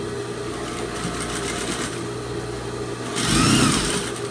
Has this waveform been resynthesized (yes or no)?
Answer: no